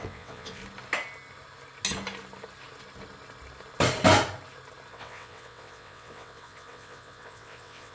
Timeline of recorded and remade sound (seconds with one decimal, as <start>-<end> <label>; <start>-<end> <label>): 0.0-0.6 remade; 0.6-4.9 recorded; 4.9-7.9 remade